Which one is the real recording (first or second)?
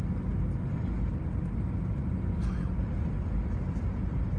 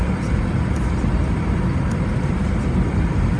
first